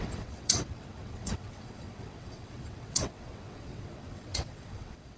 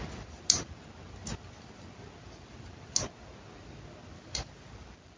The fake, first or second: first